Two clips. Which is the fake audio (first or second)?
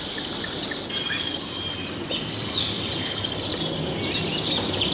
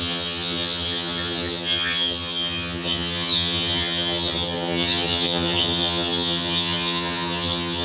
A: second